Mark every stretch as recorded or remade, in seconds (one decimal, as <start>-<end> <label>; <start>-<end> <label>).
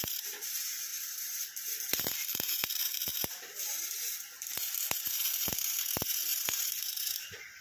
0.0-7.6 remade